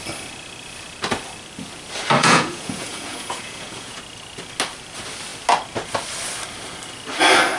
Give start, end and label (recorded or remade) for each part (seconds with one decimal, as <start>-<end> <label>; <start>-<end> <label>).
0.0-2.2 recorded; 2.2-4.0 remade; 4.0-7.6 recorded